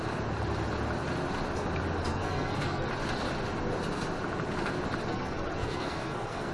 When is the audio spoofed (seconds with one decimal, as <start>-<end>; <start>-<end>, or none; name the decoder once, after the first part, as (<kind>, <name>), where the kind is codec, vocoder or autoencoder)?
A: 2.1-2.9 (codec, SNAC); 5.1-6.5